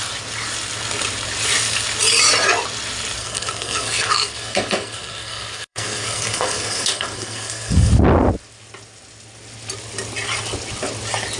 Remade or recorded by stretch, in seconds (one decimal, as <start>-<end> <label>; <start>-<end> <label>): 0.0-3.2 recorded; 3.2-7.9 remade; 7.9-11.4 recorded